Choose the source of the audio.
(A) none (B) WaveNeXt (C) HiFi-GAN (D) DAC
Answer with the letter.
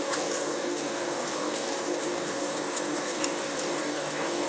D